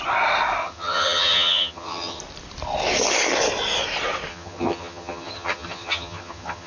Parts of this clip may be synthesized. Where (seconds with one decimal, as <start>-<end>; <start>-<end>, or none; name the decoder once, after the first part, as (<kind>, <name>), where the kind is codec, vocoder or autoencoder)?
0.6-2.2 (vocoder, HiFi-GAN); 4.3-6.7